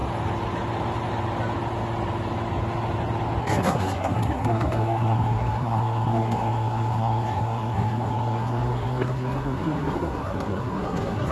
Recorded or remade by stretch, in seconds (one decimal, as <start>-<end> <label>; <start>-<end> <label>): 0.0-3.4 recorded; 3.4-11.3 remade